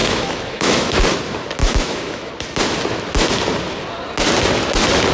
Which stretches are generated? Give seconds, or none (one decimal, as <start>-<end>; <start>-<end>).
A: 0.0-1.0; 1.6-2.3